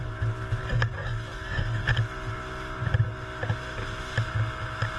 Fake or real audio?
real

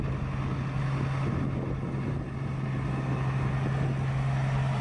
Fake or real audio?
real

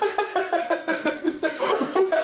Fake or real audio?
fake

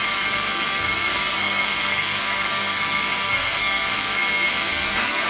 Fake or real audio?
fake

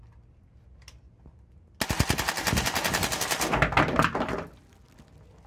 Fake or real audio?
real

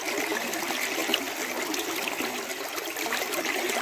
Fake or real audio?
real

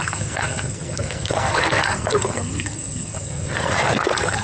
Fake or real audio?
fake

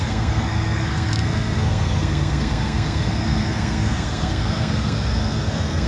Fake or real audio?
fake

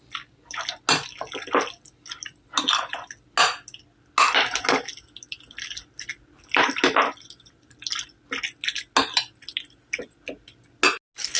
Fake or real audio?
real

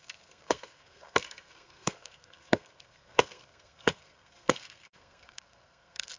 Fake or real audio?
fake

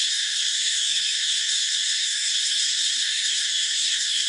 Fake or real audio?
fake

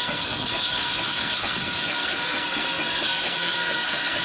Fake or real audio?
fake